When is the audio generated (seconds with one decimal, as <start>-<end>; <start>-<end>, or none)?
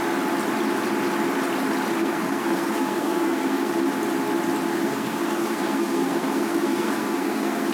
2.0-3.7; 4.7-7.7